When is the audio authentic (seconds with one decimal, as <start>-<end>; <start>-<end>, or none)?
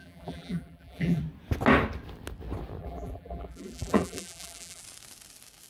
1.2-2.8; 4.8-5.7